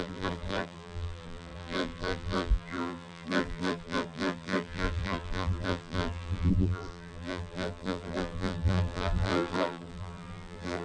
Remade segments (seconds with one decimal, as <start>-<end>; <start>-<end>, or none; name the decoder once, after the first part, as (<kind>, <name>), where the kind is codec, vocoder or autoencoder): 0.0-10.8 (vocoder, BigVGAN v2)